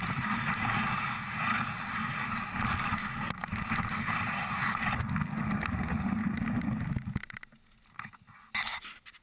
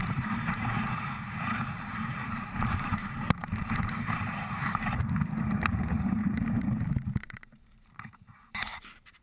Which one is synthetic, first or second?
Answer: second